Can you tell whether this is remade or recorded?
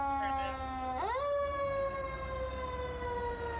recorded